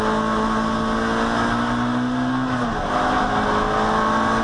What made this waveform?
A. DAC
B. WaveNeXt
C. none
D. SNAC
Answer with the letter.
C